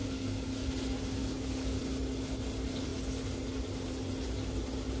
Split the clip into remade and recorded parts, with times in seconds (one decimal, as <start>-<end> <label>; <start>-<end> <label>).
0.0-0.7 remade; 0.7-1.2 recorded; 1.2-1.8 remade; 1.8-5.0 recorded